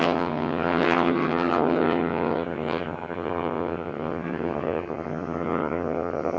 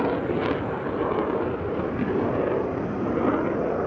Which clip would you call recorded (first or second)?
second